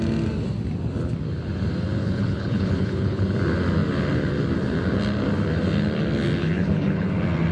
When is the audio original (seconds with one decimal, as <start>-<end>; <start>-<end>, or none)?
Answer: 0.0-2.0; 3.3-6.4; 7.1-7.5